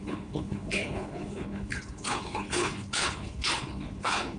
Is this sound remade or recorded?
remade